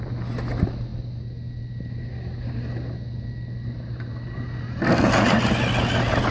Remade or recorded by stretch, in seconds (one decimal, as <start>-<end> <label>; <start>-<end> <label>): 0.0-6.3 recorded